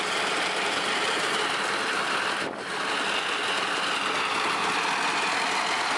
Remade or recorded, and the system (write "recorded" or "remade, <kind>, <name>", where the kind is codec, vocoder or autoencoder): recorded